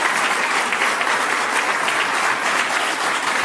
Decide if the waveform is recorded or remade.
recorded